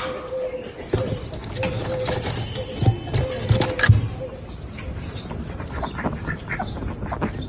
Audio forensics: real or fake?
real